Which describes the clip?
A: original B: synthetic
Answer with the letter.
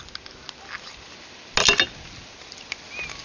A